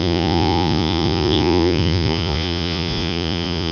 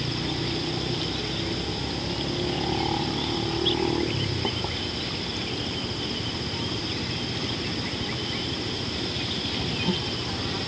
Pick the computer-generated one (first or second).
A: first